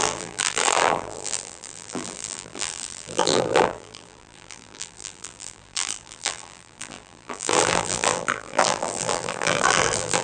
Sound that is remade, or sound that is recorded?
remade